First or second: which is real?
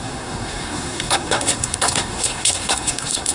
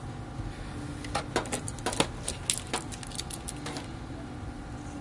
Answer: second